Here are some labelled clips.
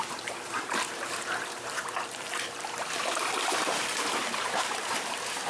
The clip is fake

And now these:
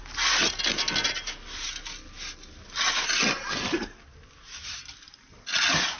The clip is real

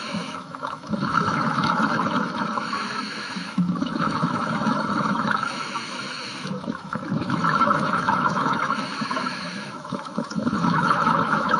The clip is fake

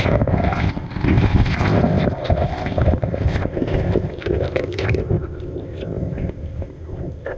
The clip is fake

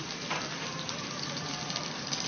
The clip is fake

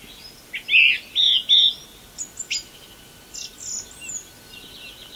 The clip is real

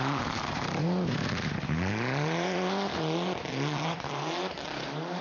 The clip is fake